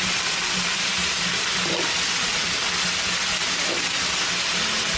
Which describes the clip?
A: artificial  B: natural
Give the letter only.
B